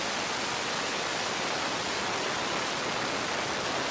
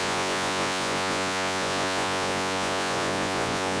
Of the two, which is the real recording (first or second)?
first